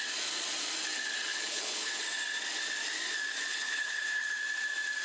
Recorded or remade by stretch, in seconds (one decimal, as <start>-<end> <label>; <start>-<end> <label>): 0.0-1.3 recorded; 1.3-2.0 remade; 2.0-3.5 recorded; 3.5-4.4 remade; 4.4-5.0 recorded

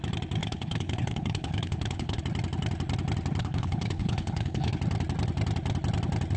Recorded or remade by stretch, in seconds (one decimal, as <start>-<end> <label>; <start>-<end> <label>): 0.0-0.4 recorded; 0.4-2.2 remade; 2.2-3.4 recorded; 3.4-4.8 remade; 4.8-6.4 recorded